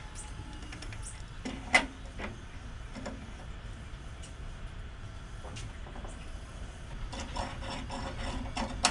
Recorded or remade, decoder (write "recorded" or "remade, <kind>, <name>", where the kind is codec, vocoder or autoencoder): recorded